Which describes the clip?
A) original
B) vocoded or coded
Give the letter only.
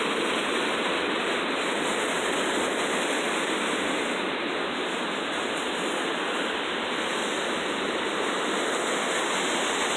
A